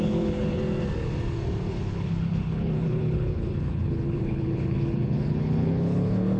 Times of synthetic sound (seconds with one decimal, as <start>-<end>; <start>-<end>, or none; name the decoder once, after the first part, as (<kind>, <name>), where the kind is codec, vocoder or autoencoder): 0.0-0.6 (codec, HILCodec); 1.7-6.4